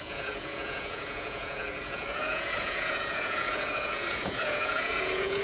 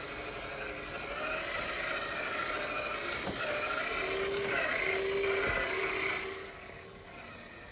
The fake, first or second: first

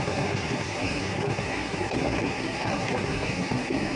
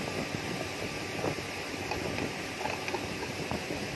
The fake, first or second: first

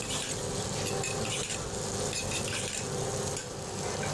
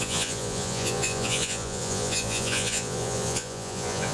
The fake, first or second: second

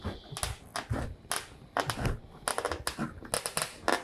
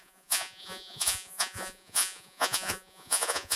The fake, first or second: second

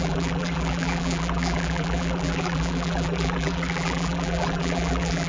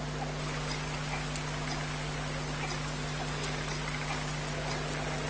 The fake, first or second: first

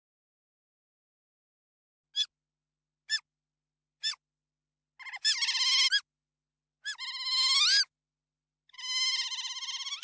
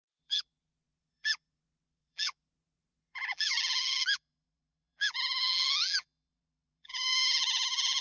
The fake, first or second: second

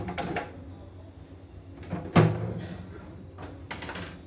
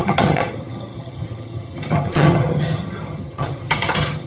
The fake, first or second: second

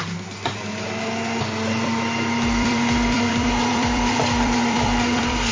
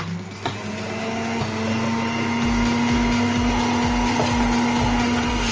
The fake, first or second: first